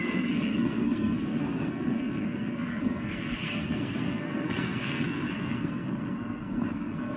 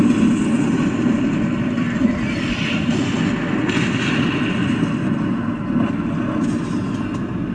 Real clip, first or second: second